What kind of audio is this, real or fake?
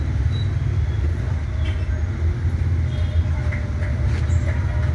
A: real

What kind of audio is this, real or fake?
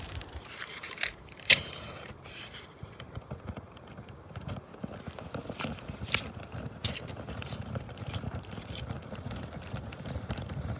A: fake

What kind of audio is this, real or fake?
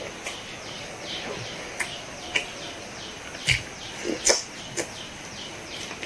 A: real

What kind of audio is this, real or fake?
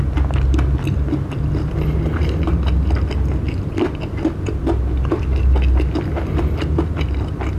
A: real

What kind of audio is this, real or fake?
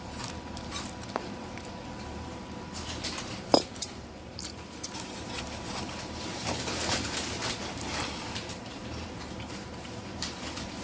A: fake